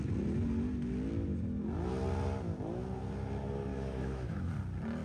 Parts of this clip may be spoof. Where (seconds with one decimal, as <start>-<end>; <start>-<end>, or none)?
3.7-4.5